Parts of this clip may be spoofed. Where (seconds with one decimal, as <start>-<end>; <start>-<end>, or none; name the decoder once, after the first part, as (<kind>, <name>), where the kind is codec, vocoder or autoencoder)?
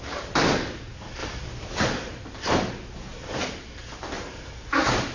1.2-1.8 (vocoder, BigVGAN v2)